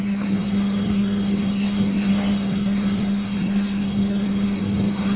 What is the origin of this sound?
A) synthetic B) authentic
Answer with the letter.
A